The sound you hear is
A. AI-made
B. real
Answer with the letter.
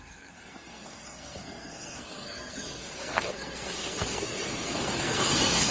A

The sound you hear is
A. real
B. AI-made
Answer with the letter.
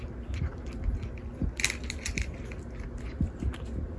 A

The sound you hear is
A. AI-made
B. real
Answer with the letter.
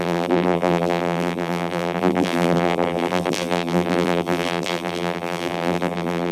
A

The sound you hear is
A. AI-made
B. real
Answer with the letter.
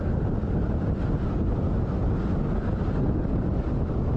B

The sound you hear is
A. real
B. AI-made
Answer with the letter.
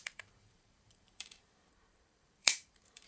B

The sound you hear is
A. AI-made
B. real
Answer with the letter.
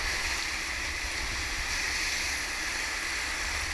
B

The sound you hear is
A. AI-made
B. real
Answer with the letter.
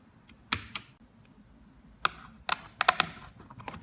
B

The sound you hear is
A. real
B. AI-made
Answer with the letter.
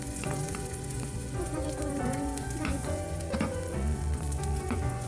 B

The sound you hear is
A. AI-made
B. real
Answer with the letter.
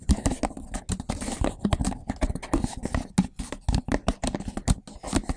B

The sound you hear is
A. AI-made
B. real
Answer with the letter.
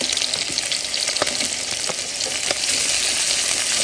B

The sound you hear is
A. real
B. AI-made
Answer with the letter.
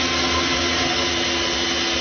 A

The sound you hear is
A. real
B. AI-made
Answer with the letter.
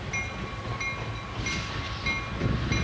A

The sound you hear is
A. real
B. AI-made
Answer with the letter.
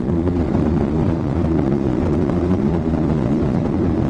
B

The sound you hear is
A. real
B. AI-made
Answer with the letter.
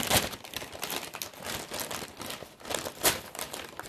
A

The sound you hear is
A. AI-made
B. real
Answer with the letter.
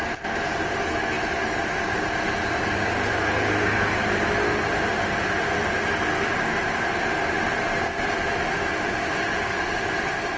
B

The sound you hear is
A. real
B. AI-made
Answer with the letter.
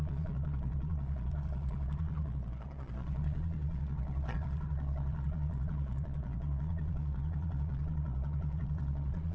B